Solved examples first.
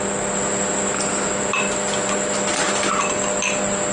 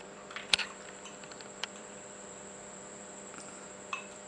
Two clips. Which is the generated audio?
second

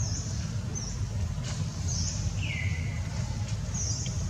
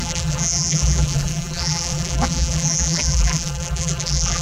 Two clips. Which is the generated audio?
second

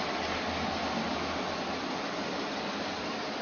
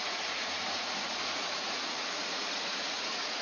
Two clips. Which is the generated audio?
second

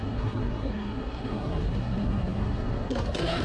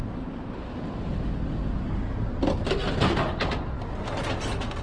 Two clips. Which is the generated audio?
first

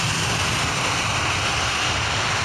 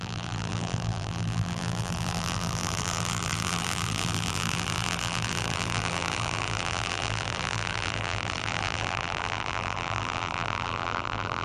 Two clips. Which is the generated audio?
second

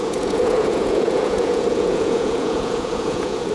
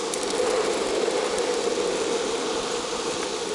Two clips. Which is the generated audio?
first